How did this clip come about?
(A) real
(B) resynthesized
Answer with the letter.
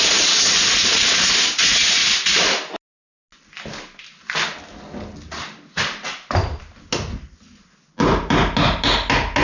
A